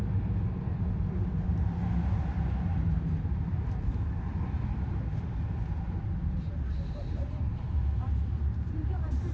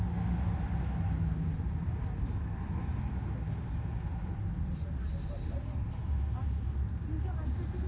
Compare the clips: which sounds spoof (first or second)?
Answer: first